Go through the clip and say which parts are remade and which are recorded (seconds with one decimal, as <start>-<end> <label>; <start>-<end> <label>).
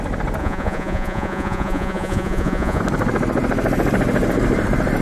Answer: 0.0-0.4 recorded; 0.4-2.8 remade; 2.8-5.0 recorded